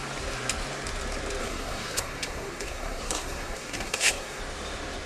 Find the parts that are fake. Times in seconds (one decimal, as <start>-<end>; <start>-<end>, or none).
1.4-4.4